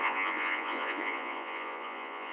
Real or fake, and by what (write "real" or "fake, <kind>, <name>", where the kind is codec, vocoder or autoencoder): fake, vocoder, Vocos